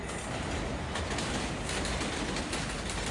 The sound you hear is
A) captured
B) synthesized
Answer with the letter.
A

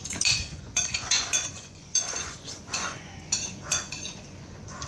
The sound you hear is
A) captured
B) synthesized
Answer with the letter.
B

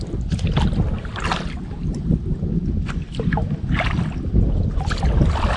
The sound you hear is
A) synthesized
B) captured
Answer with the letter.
B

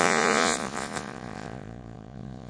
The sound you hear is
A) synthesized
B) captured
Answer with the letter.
A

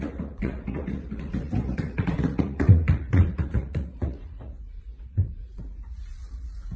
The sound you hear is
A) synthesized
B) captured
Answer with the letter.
A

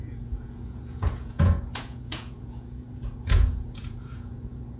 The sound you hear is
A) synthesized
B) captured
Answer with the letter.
A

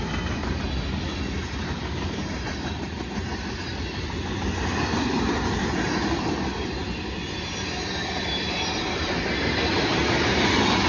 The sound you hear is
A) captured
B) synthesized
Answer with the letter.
A